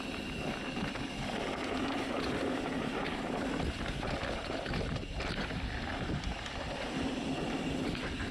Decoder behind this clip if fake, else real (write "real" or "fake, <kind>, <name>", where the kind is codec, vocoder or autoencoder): real